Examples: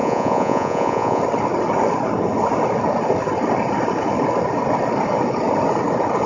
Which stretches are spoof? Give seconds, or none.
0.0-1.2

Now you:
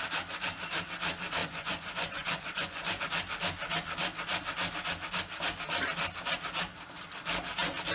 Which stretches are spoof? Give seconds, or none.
1.4-3.0